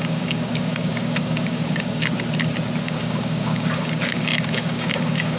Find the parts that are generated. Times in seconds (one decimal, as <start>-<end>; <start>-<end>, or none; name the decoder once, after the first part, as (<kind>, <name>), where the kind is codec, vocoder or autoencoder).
0.0-2.1 (codec, DAC); 2.8-5.4